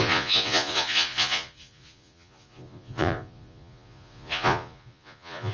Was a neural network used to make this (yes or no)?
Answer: yes